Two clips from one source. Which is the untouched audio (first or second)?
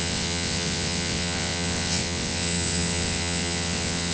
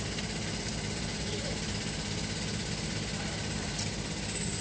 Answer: second